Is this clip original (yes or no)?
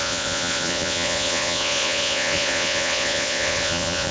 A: no